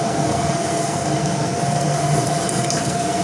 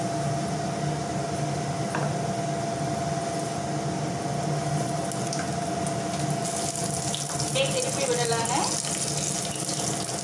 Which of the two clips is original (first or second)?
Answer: second